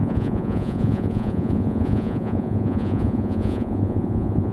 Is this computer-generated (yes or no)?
yes